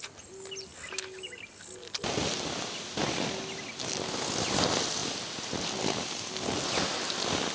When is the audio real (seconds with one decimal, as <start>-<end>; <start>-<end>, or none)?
0.0-5.0; 5.8-7.5